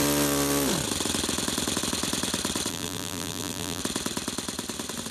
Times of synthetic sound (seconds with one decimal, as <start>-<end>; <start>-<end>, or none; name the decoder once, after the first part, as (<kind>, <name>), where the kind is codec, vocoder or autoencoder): 2.7-3.8 (vocoder, BigVGAN v2)